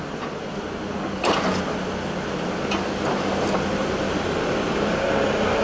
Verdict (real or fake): real